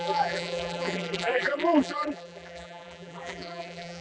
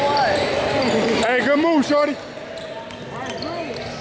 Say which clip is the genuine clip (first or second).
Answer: second